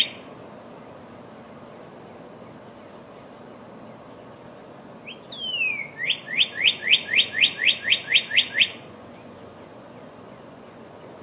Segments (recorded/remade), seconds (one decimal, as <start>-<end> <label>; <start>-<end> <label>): 0.0-0.4 remade; 0.4-4.1 recorded; 4.1-5.0 remade; 5.0-6.1 recorded; 6.1-11.2 remade